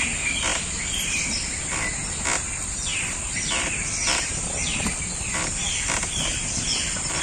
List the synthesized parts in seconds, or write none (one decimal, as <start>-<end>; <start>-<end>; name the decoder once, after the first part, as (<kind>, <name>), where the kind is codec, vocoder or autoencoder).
0.5-2.1 (vocoder, BigVGAN v2); 2.9-7.2